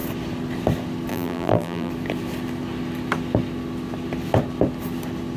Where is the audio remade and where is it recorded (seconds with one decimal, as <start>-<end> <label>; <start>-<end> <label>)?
0.0-1.1 recorded; 1.1-1.9 remade; 1.9-5.4 recorded